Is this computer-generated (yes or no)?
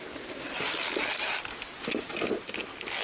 no